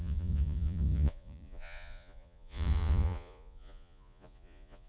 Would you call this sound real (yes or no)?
no